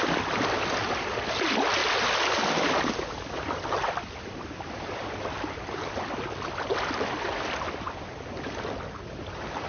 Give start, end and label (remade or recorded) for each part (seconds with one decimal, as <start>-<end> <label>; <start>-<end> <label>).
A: 0.0-9.7 recorded